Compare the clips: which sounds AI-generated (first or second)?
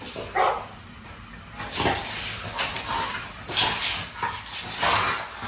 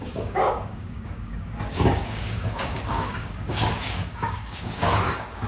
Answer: second